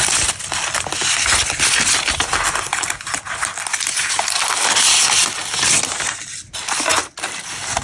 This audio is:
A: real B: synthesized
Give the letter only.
A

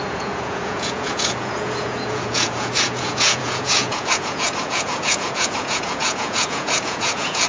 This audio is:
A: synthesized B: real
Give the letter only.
A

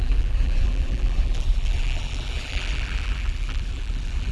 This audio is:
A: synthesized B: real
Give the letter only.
A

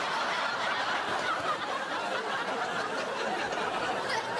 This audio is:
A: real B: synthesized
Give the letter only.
A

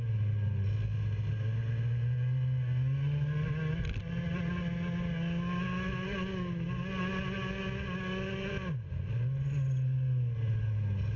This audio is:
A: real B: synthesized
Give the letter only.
A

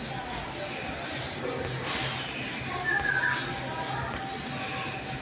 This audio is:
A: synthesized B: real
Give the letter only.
B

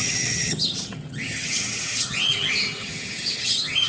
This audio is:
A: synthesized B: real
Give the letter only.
A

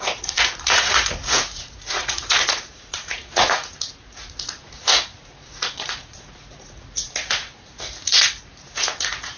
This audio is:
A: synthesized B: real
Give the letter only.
A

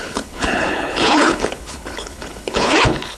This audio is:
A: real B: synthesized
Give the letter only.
B